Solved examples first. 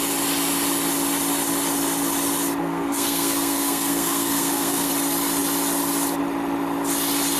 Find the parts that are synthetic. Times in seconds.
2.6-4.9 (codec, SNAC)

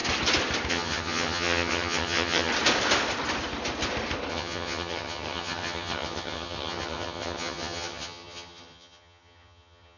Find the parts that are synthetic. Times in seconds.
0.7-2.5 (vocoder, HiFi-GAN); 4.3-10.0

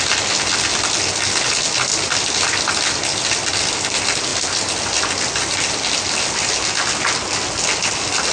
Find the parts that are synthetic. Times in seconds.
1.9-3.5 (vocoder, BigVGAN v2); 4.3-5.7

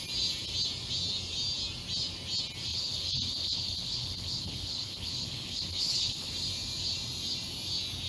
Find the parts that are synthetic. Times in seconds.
2.7-6.3 (codec, HILCodec)

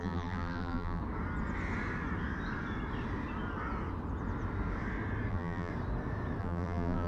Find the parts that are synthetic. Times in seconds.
0.0-1.0 (vocoder, BigVGAN v2); 5.3-5.7; 6.4-7.1

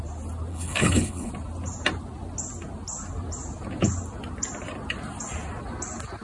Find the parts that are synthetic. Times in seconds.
0.5-1.3 (codec, HILCodec)